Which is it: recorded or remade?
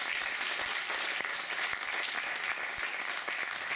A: recorded